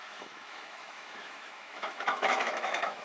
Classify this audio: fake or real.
fake